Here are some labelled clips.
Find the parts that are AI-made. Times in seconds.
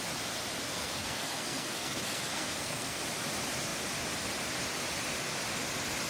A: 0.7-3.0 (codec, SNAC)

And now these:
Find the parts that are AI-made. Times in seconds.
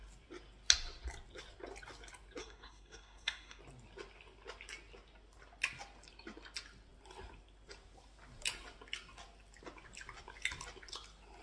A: 2.4-3.6 (codec, SNAC)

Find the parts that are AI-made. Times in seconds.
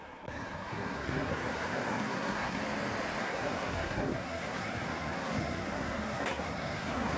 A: 0.0-2.6 (codec, SNAC); 3.2-7.2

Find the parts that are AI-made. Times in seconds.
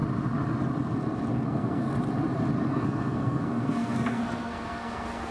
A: 1.3-1.9 (codec, SNAC); 2.7-5.3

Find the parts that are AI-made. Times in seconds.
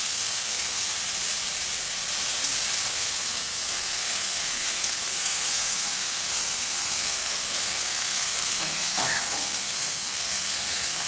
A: 0.0-0.8 (codec, SNAC); 2.9-11.1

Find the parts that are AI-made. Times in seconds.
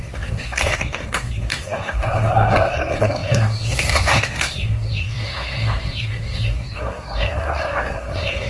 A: 0.0-8.5 (codec, SNAC)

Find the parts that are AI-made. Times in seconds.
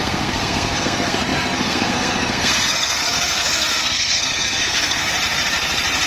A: 0.0-5.1 (codec, SNAC)